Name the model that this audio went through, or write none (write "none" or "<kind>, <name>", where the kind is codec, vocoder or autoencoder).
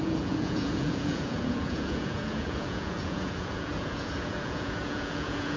vocoder, Vocos